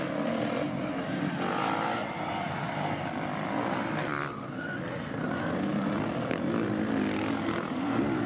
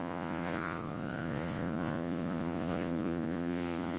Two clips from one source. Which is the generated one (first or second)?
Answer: second